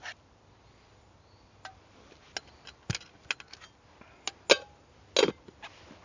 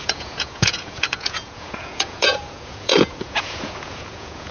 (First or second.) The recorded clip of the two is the first